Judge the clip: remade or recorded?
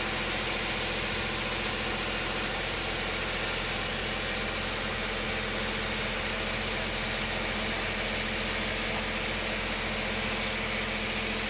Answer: recorded